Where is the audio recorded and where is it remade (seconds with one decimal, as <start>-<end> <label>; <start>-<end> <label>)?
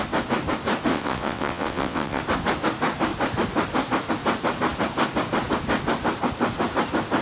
0.0-0.9 recorded; 0.9-2.2 remade; 2.2-7.2 recorded